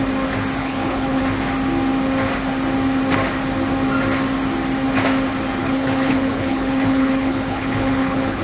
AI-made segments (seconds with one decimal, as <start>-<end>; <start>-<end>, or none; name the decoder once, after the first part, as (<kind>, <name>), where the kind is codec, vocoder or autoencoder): 0.6-1.2 (codec, HILCodec); 5.6-8.4